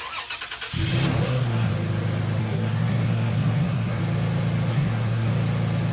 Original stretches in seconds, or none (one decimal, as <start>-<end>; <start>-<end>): 0.0-1.2; 1.7-2.4; 4.0-4.7; 5.3-5.9